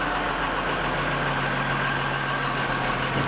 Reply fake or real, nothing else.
real